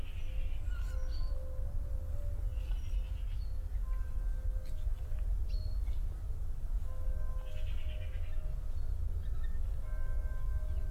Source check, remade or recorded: recorded